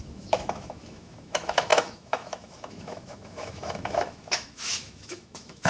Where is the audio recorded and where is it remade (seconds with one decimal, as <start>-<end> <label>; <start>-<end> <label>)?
0.0-5.7 remade